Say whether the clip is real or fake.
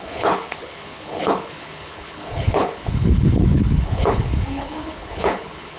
fake